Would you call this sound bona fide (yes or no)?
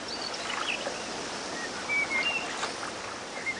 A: yes